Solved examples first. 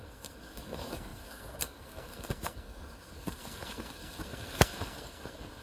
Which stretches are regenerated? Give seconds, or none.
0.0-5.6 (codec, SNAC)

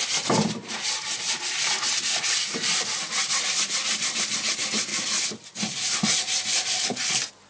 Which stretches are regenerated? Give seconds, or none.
none

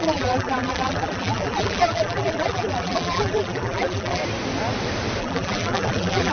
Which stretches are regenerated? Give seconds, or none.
0.0-4.2 (vocoder, BigVGAN v2); 5.2-6.3